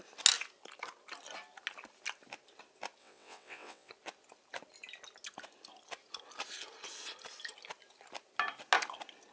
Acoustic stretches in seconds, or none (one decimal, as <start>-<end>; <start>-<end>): 0.0-3.0; 3.9-9.3